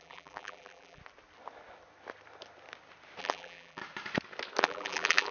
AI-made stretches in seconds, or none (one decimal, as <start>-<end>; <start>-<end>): 0.0-1.0; 3.2-3.8; 4.6-5.3